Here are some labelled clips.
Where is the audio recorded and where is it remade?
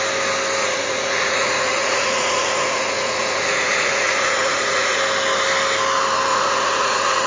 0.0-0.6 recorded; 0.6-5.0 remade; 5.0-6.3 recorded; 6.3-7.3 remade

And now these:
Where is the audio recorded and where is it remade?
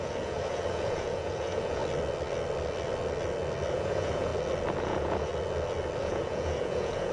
0.0-1.8 remade; 1.8-3.7 recorded; 3.7-4.3 remade; 4.3-4.8 recorded; 4.8-5.3 remade; 5.3-6.0 recorded; 6.0-7.1 remade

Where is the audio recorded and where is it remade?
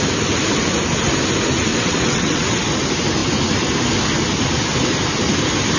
0.0-1.7 recorded; 1.7-2.6 remade; 2.6-5.8 recorded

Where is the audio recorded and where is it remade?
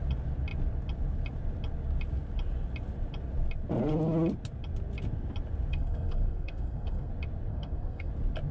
0.0-5.7 recorded; 5.7-7.1 remade; 7.1-7.5 recorded; 7.5-8.1 remade; 8.1-8.5 recorded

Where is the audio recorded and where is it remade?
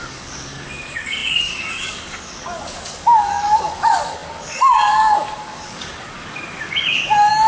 0.0-7.5 remade